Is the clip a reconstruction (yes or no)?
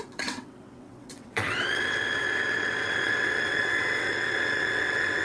yes